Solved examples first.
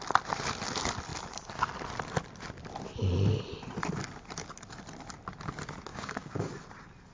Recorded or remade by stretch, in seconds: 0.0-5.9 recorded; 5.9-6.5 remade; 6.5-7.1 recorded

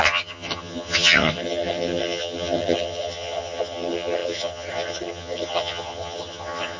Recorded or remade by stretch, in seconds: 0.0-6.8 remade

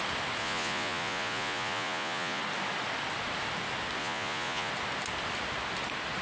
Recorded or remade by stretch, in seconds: 0.0-0.4 recorded; 0.4-2.4 remade; 2.4-4.0 recorded; 4.0-4.7 remade; 4.7-6.2 recorded

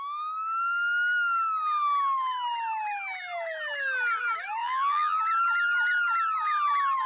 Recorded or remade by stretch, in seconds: 0.0-4.6 recorded; 4.6-5.2 remade; 5.2-7.1 recorded

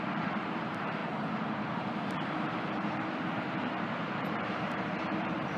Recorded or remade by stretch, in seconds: 0.0-5.6 remade

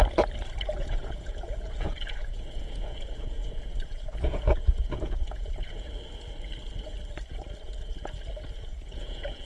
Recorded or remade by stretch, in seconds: 0.0-0.8 recorded; 0.8-5.9 remade; 5.9-8.7 recorded; 8.7-9.5 remade

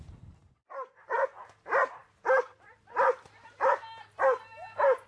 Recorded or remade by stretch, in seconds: 0.0-5.1 recorded

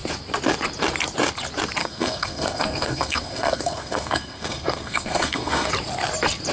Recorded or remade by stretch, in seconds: 0.0-1.8 recorded; 1.8-5.7 remade; 5.7-6.5 recorded